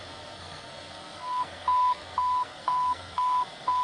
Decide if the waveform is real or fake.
fake